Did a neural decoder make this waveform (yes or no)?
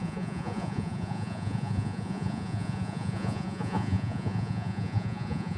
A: yes